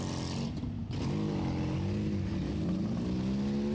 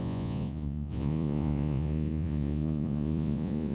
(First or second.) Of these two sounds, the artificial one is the second